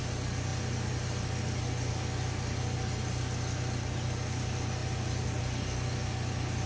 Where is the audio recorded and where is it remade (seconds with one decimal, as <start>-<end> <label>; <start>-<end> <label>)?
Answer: 0.0-6.7 recorded